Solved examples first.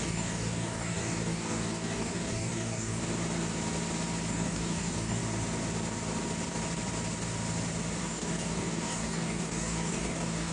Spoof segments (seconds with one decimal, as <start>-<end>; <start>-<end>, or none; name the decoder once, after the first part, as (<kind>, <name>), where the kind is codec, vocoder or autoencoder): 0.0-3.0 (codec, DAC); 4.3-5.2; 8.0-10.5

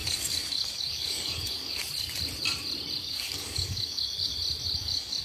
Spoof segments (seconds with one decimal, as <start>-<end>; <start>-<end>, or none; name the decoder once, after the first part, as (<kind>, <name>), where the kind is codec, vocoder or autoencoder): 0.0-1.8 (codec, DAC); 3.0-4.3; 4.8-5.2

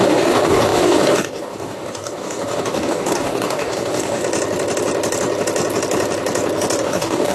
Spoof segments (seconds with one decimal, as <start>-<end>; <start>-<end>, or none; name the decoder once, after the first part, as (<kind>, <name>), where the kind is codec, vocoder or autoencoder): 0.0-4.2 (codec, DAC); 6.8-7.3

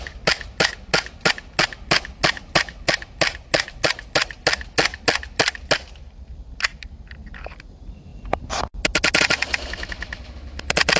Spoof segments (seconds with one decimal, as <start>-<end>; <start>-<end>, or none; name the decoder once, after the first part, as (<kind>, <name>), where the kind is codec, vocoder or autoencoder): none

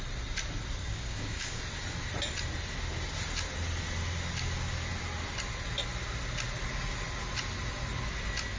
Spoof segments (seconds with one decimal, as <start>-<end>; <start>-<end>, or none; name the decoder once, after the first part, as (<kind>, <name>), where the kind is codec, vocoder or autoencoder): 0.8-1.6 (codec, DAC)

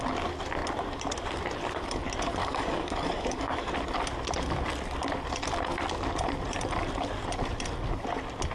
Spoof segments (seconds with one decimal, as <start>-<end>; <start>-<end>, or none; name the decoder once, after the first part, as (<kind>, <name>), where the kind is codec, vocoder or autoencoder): 2.4-3.7 (codec, DAC)

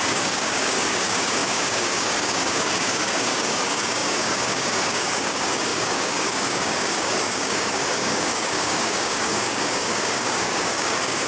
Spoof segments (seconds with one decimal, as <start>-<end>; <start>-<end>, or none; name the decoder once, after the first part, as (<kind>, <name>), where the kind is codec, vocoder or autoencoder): 0.0-11.3 (codec, DAC)

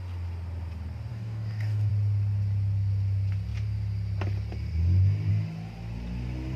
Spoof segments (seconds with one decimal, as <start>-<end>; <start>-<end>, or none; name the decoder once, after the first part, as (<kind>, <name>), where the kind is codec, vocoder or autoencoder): 1.1-1.9 (codec, DAC)